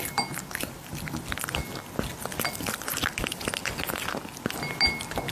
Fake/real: real